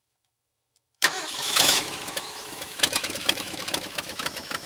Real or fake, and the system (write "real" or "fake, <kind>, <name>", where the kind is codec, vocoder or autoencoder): fake, autoencoder, DAC-VAE